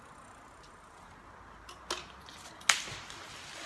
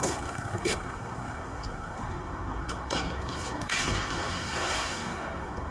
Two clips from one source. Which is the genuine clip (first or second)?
first